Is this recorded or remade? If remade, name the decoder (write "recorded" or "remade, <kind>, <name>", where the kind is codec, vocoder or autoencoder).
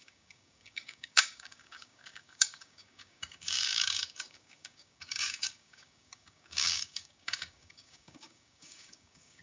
remade, codec, DAC